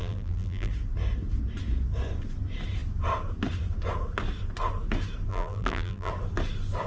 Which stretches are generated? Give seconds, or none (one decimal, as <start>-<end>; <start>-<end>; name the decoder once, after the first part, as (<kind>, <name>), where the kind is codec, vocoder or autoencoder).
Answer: 0.0-0.7 (vocoder, BigVGAN v2); 5.3-6.1